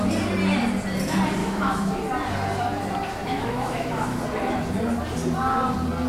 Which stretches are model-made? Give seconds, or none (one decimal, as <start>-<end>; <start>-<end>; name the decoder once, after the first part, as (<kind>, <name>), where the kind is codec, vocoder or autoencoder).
1.4-2.0 (autoencoder, DAC-VAE); 3.2-4.2